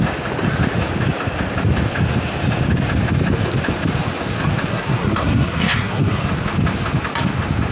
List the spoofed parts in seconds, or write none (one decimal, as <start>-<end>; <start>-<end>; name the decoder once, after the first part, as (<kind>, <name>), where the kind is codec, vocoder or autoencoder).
4.7-6.2 (codec, SNAC)